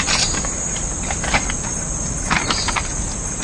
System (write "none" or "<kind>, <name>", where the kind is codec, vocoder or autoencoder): none